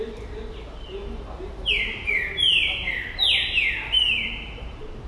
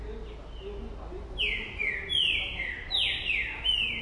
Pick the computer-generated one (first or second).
first